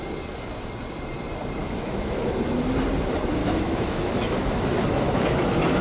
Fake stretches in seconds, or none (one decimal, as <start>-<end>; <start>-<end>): 1.6-2.3; 3.4-5.8